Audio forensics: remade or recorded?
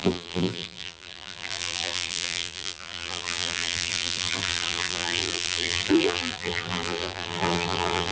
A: remade